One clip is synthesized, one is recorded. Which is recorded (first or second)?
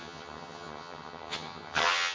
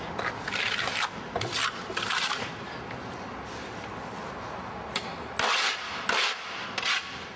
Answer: second